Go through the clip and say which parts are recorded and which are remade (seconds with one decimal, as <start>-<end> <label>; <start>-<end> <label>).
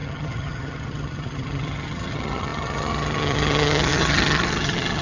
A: 0.0-5.0 remade